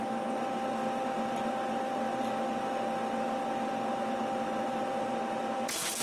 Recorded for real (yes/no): yes